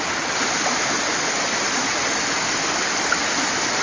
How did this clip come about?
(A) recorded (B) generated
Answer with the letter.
A